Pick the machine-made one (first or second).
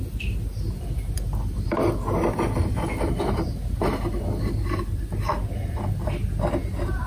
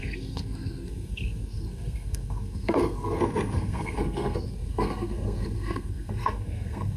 second